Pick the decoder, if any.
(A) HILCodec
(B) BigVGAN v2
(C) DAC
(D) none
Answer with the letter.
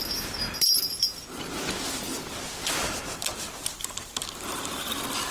D